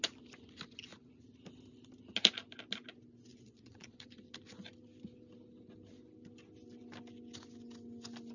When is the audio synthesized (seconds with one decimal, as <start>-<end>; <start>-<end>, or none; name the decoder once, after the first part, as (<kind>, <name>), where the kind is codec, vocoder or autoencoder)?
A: 3.3-4.1 (vocoder, Vocos)